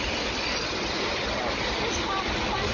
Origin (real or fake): real